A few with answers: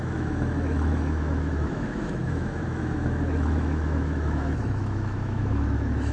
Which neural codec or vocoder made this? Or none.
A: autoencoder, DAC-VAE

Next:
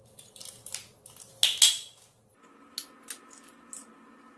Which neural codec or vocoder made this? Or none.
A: none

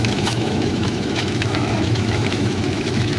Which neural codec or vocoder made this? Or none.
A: autoencoder, DAC-VAE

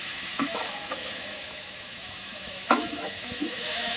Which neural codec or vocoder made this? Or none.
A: autoencoder, DAC-VAE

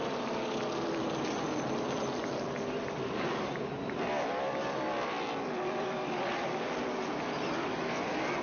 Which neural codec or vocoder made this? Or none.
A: none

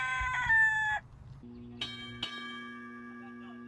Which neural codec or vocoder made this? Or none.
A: none